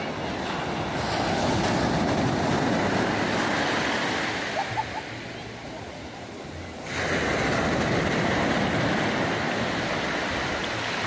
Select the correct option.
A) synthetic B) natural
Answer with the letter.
B